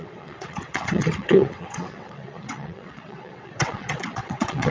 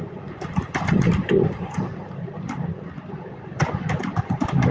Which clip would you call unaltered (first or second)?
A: second